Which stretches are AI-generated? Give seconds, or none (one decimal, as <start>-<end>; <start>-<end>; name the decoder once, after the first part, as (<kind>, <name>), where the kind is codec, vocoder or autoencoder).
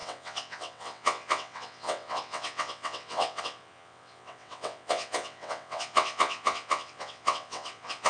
0.0-8.1 (vocoder, WaveNeXt)